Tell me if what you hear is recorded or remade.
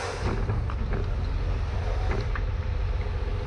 recorded